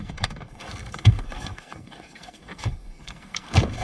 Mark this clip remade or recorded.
remade